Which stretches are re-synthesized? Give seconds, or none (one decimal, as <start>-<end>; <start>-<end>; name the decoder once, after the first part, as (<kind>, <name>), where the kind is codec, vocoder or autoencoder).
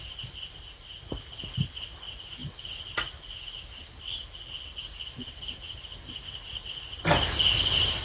none